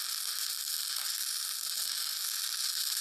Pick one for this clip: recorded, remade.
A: recorded